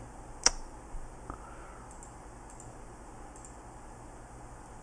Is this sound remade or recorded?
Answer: recorded